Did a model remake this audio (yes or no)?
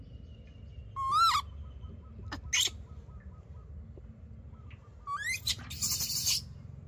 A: no